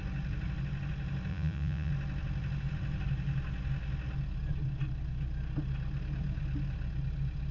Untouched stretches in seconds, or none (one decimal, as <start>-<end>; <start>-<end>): 0.0-1.3; 1.9-7.5